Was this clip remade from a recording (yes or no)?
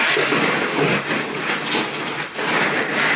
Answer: no